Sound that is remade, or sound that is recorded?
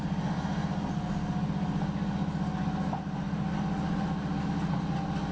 recorded